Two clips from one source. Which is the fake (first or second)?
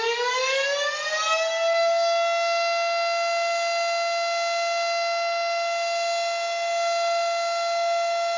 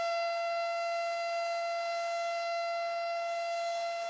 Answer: second